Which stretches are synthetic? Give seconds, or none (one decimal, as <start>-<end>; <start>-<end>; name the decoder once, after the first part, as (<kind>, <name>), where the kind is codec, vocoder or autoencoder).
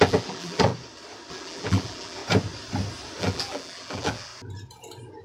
0.0-0.7 (vocoder, BigVGAN v2); 1.3-2.2; 3.2-4.3